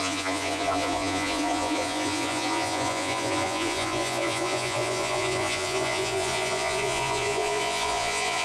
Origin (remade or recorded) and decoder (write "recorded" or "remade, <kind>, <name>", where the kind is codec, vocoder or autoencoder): remade, vocoder, Vocos